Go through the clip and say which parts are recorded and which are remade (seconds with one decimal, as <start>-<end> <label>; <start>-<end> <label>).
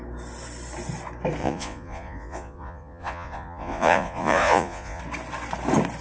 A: 0.0-1.4 recorded; 1.4-5.0 remade; 5.0-6.0 recorded